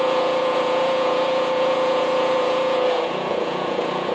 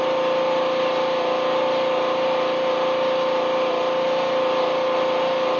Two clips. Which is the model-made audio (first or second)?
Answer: first